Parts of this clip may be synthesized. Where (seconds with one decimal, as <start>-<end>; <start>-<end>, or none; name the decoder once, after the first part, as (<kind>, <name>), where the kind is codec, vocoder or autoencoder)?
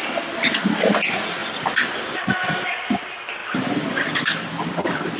none